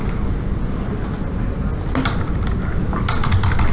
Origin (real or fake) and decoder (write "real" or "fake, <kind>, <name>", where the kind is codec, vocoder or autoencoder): real